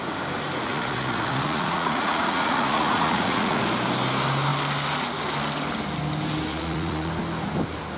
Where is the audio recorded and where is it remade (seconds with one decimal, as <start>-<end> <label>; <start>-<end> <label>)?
0.0-0.7 recorded; 0.7-3.6 remade; 3.6-6.5 recorded; 6.5-7.1 remade; 7.1-8.0 recorded